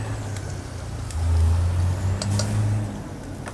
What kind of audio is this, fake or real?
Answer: real